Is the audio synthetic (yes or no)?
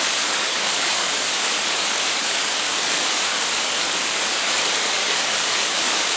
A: yes